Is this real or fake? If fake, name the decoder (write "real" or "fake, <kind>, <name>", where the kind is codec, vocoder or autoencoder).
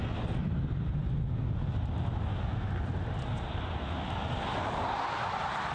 real